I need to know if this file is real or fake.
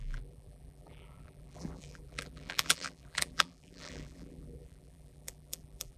fake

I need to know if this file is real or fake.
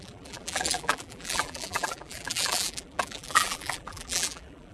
fake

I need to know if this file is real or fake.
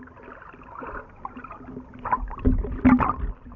real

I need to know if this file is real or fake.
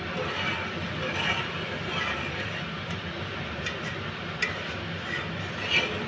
real